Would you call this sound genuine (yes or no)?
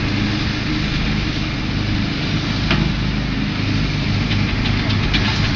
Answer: yes